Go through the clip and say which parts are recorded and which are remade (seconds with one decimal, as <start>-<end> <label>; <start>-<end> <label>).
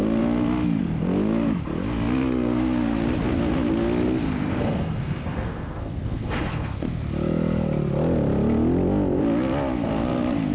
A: 0.0-4.5 recorded; 4.5-7.0 remade; 7.0-10.5 recorded